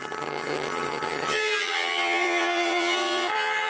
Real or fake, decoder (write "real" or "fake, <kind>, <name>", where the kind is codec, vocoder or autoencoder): fake, vocoder, HiFi-GAN